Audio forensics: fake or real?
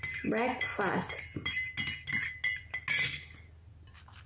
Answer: real